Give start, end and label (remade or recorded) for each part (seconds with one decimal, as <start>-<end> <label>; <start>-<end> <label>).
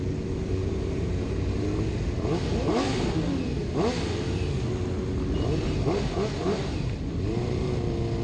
0.0-8.2 recorded